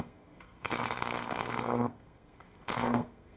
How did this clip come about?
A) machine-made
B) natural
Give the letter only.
A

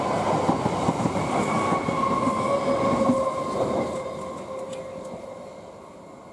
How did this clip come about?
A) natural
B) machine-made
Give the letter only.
A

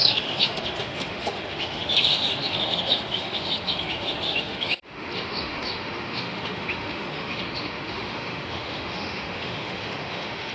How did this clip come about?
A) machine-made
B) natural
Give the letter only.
A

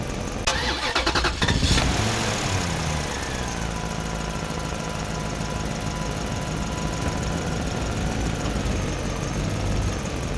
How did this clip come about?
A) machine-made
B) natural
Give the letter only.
B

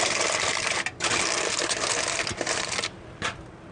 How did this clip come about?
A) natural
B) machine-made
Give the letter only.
A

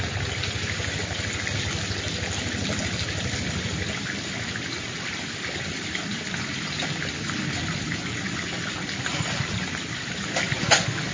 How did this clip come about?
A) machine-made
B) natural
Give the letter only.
B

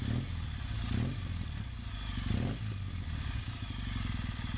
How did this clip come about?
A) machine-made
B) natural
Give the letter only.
B